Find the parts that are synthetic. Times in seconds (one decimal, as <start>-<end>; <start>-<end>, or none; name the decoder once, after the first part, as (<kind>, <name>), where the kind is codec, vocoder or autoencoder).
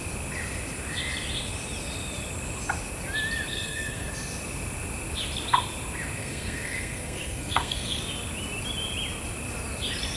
3.5-4.1 (codec, SNAC); 6.2-8.0